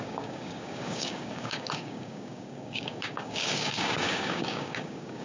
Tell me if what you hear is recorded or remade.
remade